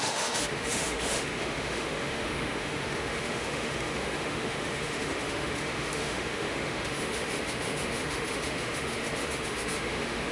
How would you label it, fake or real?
fake